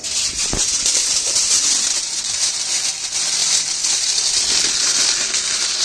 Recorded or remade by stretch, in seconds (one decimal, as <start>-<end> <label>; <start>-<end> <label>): 0.0-3.4 recorded; 3.4-4.7 remade; 4.7-5.8 recorded